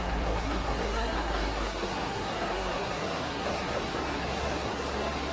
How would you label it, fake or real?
fake